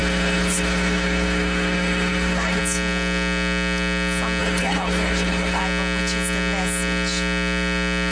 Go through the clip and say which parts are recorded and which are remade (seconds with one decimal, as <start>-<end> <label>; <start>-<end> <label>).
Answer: 0.0-2.6 remade; 2.6-4.4 recorded; 4.4-5.6 remade; 5.6-8.1 recorded